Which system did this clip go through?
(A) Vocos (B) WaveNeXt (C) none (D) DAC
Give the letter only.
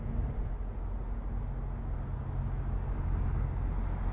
C